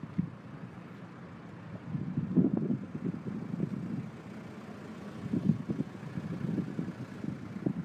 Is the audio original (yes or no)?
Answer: yes